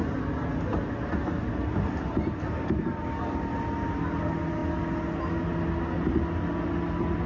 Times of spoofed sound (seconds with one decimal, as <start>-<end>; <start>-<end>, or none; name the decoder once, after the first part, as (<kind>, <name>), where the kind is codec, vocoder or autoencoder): none